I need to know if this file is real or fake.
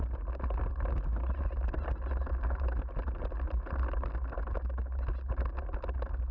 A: real